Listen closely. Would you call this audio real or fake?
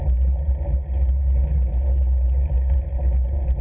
real